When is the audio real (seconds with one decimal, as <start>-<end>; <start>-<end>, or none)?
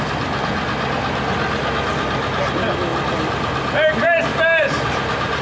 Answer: 0.0-4.3